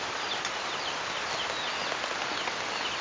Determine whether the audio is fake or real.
real